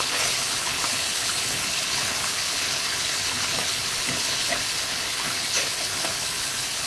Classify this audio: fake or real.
fake